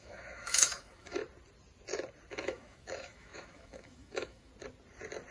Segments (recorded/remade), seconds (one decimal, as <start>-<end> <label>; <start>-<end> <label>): 0.0-1.2 remade; 1.2-2.3 recorded; 2.3-4.5 remade; 4.5-5.3 recorded